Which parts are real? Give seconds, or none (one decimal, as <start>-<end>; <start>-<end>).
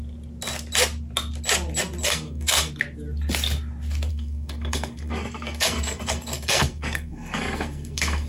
0.0-2.0; 2.7-4.1